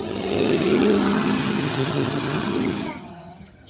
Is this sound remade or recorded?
remade